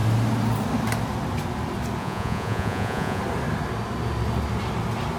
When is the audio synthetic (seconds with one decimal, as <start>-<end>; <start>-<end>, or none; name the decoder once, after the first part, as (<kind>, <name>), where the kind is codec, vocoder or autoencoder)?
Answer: 2.0-3.2 (vocoder, Vocos)

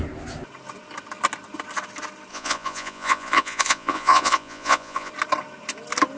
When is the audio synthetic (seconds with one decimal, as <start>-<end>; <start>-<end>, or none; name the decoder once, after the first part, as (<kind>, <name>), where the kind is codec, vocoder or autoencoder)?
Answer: 2.3-5.1 (vocoder, Vocos)

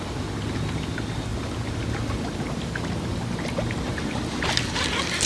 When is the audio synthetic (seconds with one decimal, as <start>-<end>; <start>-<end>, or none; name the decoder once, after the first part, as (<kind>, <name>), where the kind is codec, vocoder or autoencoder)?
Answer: none